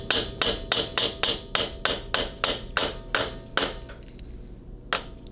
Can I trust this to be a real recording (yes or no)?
yes